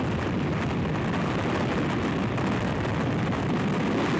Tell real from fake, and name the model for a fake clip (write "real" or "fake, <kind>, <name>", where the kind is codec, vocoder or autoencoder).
real